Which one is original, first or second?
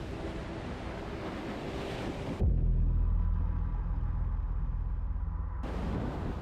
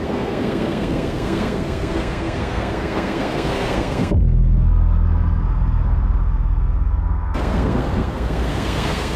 first